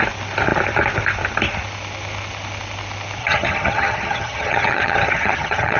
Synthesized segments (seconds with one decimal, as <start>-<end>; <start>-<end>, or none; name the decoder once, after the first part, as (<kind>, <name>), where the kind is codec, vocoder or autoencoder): 3.2-5.8 (vocoder, HiFi-GAN)